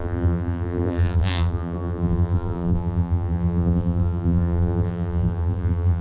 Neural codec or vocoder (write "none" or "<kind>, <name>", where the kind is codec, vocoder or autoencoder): vocoder, BigVGAN v2